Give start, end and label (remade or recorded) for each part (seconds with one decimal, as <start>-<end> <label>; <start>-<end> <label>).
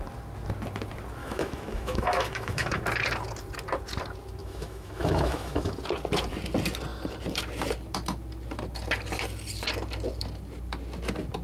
0.0-1.2 recorded; 1.2-2.8 remade; 2.8-4.4 recorded; 4.4-5.7 remade; 5.7-11.4 recorded